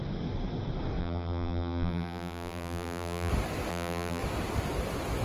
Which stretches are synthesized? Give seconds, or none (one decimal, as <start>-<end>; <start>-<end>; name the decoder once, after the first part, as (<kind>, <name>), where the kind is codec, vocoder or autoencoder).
1.0-3.3 (vocoder, BigVGAN v2); 3.7-4.2